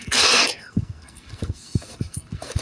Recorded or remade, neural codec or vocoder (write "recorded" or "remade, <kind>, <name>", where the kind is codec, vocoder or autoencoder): remade, codec, SNAC